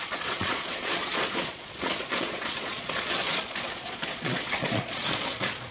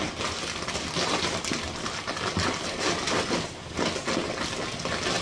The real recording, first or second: second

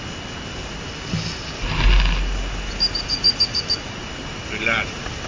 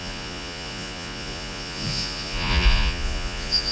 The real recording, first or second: first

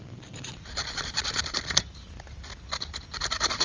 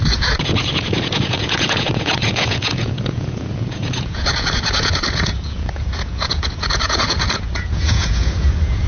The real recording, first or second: first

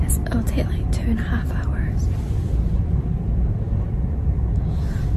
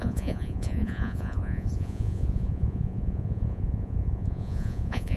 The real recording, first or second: first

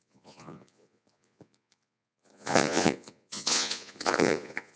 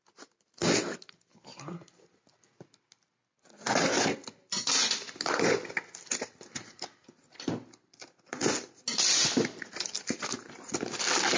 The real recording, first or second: second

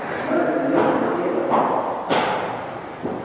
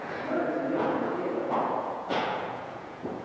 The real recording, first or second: first